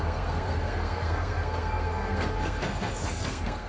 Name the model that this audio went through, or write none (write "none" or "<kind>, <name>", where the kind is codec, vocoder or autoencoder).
codec, SNAC